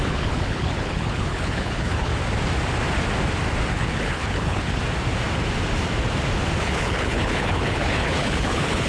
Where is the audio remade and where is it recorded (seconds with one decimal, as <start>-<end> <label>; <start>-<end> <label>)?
0.0-2.1 remade; 2.1-3.7 recorded; 3.7-4.8 remade; 4.8-6.6 recorded; 6.6-8.9 remade